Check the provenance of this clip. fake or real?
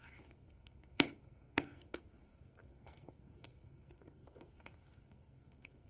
fake